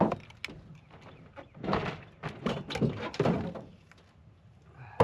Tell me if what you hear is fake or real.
real